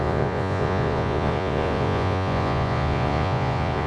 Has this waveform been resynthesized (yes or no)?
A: yes